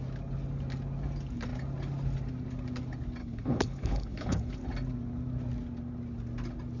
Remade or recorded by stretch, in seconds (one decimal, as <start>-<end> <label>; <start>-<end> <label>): 0.0-3.2 recorded; 3.2-4.6 remade; 4.6-6.8 recorded